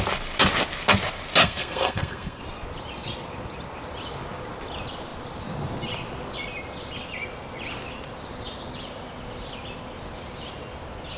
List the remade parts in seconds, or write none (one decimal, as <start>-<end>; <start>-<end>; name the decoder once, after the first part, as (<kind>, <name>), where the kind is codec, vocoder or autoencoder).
1.4-2.4 (codec, SNAC)